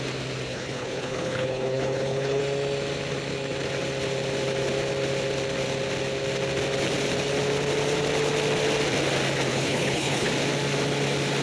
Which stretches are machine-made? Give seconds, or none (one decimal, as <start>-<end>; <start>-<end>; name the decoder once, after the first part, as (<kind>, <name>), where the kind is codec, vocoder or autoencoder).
0.5-2.4 (codec, HILCodec); 9.5-10.3